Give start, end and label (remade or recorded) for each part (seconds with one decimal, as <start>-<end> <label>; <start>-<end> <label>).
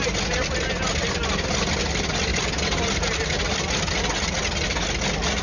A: 0.0-5.4 recorded